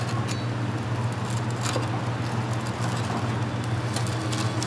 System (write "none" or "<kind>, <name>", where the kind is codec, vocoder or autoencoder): none